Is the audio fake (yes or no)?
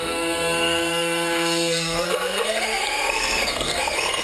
yes